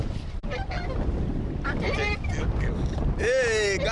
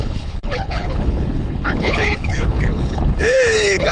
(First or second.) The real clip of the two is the first